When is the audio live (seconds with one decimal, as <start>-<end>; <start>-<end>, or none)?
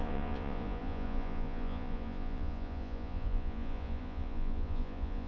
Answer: none